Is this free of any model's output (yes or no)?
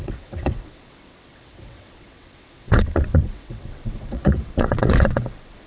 no